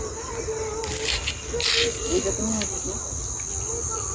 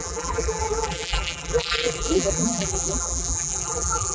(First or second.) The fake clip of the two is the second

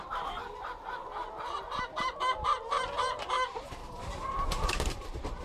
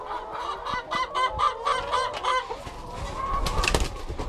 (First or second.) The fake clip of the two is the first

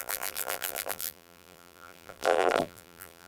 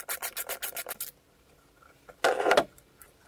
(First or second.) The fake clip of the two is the first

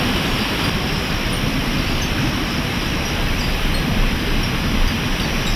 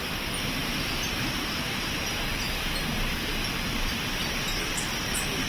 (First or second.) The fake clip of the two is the first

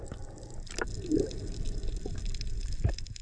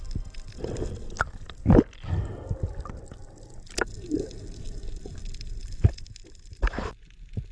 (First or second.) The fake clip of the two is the first